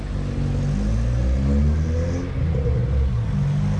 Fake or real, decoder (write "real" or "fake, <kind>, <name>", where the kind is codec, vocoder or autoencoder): real